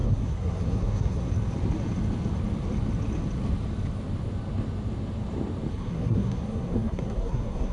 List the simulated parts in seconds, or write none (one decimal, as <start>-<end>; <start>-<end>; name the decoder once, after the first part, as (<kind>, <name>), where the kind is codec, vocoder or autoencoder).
0.0-1.3 (codec, SNAC); 5.7-7.7